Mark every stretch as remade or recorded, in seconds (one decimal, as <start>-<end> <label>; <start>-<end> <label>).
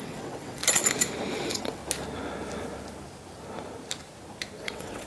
0.0-0.6 remade; 0.6-1.3 recorded; 1.3-1.8 remade; 1.8-4.6 recorded; 4.6-5.1 remade